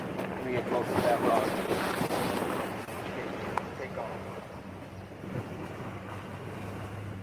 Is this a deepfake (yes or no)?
no